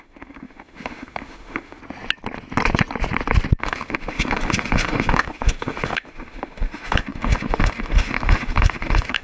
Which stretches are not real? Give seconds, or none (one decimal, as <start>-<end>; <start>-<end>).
0.0-1.8; 3.6-9.2